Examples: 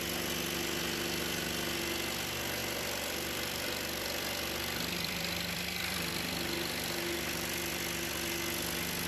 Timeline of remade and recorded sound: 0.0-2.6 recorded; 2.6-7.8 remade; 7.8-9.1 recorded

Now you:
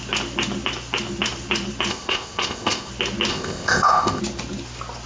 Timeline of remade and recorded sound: 0.0-1.9 recorded; 1.9-2.9 remade; 2.9-3.3 recorded; 3.3-4.2 remade; 4.2-5.1 recorded

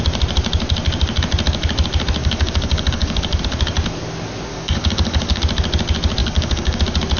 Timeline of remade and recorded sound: 0.0-2.2 recorded; 2.2-3.4 remade; 3.4-4.5 recorded; 4.5-5.4 remade; 5.4-6.2 recorded; 6.2-6.8 remade; 6.8-7.2 recorded